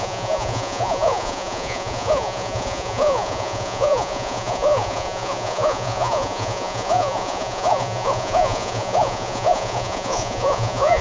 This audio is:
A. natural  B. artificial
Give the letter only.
B